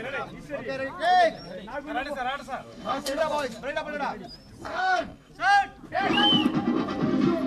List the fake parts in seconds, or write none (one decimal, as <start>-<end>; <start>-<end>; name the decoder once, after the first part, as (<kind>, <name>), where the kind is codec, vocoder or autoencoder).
2.6-3.2 (codec, DAC); 4.6-5.3